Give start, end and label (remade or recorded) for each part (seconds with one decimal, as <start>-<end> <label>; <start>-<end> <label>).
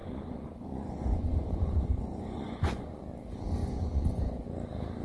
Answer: 0.0-3.0 remade; 3.0-3.6 recorded; 3.6-4.4 remade; 4.4-5.0 recorded